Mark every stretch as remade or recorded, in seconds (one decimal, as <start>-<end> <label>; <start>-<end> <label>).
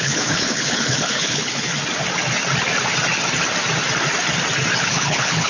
0.0-1.7 remade; 1.7-4.8 recorded; 4.8-5.5 remade